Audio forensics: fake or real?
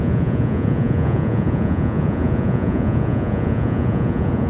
fake